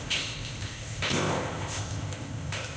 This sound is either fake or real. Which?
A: fake